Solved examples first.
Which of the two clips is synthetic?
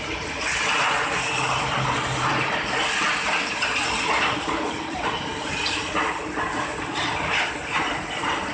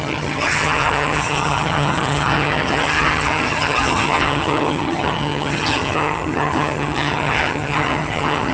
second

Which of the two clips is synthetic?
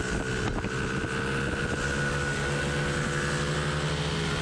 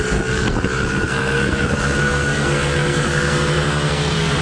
second